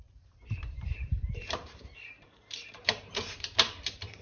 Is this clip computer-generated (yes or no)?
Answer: yes